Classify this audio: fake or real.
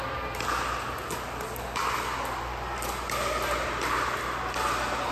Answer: real